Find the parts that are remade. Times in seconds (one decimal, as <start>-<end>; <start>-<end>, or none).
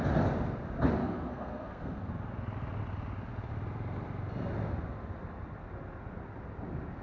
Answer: 1.0-2.1